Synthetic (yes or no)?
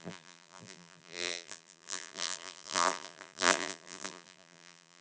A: yes